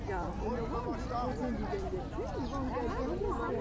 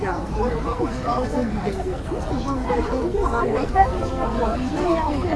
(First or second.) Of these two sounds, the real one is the first